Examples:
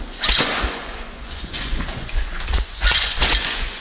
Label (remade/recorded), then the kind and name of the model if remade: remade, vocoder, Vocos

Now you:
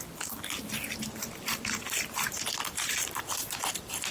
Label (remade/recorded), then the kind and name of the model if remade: recorded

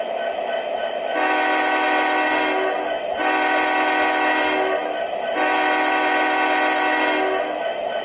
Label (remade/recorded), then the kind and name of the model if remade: recorded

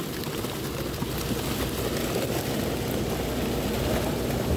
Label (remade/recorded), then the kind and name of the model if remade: recorded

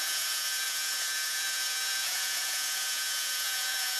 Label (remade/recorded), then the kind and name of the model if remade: remade, vocoder, Vocos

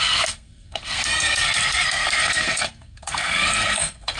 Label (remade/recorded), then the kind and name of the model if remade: remade, codec, SNAC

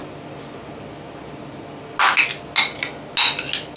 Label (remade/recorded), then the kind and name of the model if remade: recorded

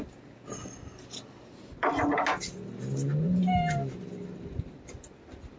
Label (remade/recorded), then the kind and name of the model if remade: recorded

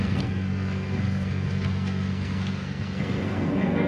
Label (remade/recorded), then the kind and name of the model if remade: remade, codec, SNAC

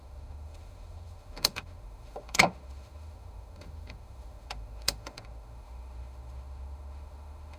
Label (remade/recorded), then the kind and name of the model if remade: remade, autoencoder, DAC-VAE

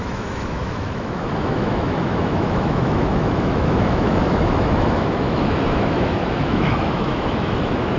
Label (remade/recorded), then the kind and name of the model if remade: remade, autoencoder, DAC-VAE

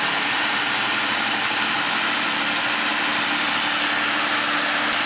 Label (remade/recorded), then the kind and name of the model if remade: recorded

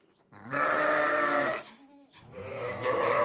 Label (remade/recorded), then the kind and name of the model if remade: remade, autoencoder, DAC-VAE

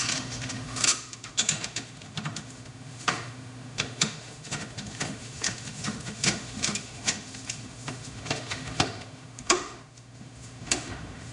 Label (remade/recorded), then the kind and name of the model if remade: remade, autoencoder, DAC-VAE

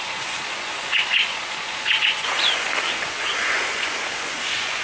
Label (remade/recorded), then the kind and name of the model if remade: remade, vocoder, Vocos